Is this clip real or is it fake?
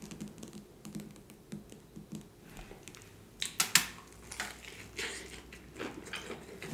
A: real